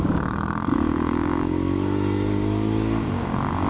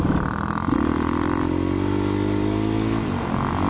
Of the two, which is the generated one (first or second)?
first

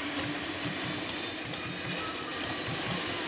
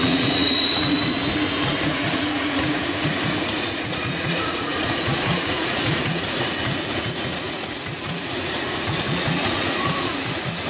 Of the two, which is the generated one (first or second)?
second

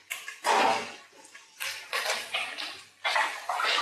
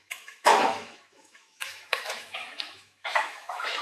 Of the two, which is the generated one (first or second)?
second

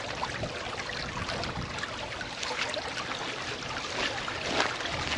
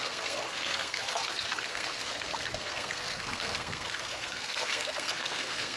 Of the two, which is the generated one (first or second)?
second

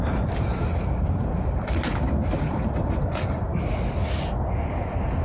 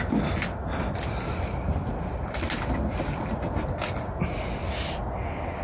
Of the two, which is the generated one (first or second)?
first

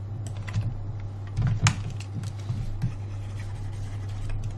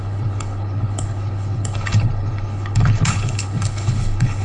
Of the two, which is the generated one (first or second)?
second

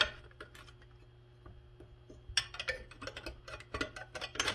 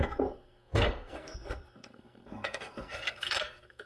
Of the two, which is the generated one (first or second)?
second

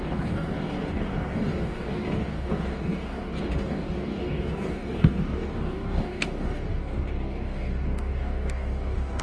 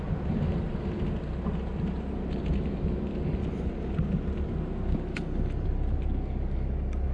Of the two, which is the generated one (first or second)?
first